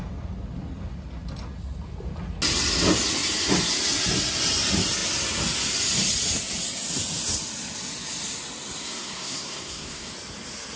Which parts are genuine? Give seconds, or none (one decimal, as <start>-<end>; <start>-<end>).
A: 0.0-8.8; 10.1-10.8